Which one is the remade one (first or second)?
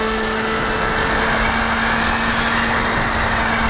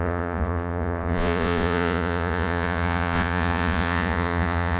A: second